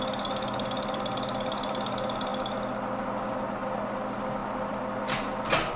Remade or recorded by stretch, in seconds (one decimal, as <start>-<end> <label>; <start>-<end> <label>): 0.0-5.8 recorded